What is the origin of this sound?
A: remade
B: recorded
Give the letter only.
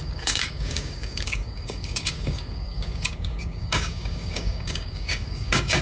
A